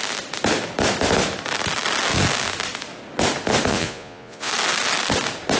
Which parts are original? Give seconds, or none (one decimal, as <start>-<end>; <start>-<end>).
0.0-3.7; 4.5-5.6